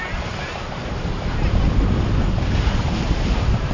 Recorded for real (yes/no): no